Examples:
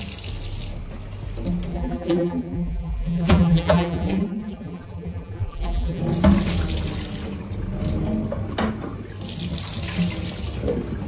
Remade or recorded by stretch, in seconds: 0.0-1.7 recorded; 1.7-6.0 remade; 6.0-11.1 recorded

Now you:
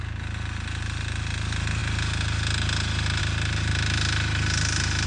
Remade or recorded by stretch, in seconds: 0.0-5.1 recorded

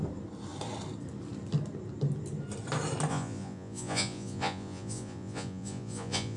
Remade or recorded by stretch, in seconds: 0.0-3.1 recorded; 3.1-6.4 remade

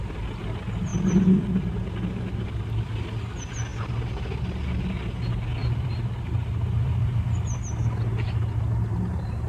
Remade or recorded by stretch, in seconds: 0.0-5.6 recorded; 5.6-7.6 remade; 7.6-9.5 recorded

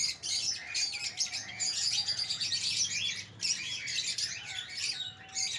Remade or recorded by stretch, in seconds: 0.0-1.4 recorded; 1.4-2.8 remade; 2.8-5.6 recorded

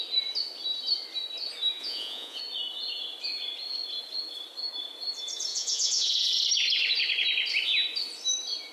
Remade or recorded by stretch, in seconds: 0.0-1.8 recorded; 1.8-2.4 remade; 2.4-5.5 recorded; 5.5-6.3 remade; 6.3-8.7 recorded